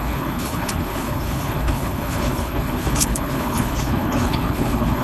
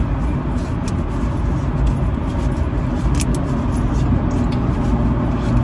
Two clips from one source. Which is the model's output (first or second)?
first